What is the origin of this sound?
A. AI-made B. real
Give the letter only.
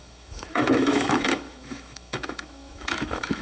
A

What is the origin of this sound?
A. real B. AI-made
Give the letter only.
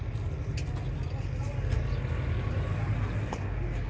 A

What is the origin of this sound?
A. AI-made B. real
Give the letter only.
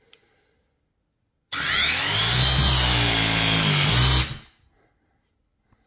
B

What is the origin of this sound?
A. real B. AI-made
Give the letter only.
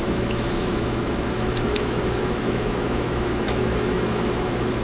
B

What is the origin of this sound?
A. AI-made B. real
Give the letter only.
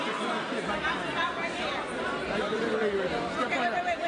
B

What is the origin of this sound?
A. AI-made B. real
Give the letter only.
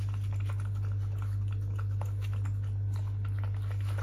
B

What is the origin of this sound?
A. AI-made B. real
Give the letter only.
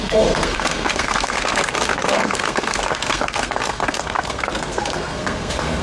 A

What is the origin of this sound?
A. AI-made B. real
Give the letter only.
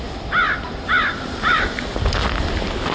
B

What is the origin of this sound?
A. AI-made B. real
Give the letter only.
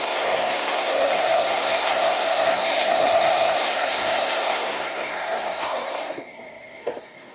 A